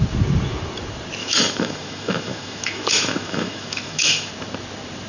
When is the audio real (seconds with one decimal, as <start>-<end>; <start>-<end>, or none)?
0.0-1.2; 4.3-5.1